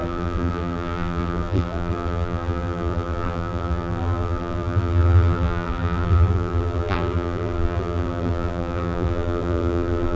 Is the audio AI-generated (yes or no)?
yes